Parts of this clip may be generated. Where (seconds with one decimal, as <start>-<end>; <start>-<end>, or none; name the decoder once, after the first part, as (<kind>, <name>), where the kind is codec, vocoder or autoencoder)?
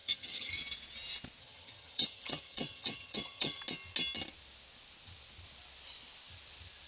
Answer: 0.0-0.5 (vocoder, HiFi-GAN); 1.4-3.6